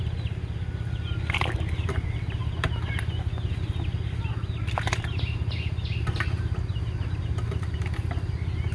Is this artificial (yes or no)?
no